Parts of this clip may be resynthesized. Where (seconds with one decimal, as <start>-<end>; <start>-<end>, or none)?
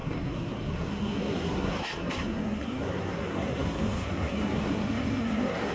0.0-5.7